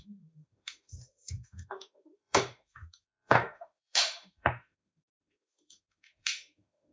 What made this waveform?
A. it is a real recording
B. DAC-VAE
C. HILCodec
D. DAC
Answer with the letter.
B